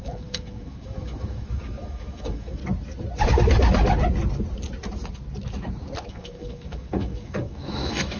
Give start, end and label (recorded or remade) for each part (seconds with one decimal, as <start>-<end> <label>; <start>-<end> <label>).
0.0-2.6 remade; 2.6-6.1 recorded; 6.1-8.2 remade